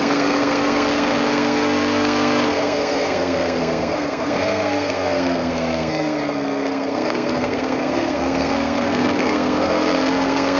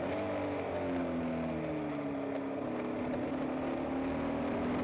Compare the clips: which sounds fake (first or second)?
first